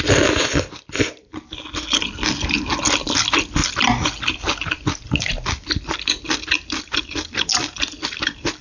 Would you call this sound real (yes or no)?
yes